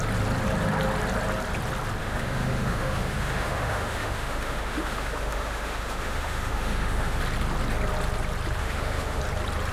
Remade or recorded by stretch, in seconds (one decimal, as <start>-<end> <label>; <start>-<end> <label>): 0.0-2.0 recorded; 2.0-7.2 remade; 7.2-8.6 recorded; 8.6-9.2 remade; 9.2-9.7 recorded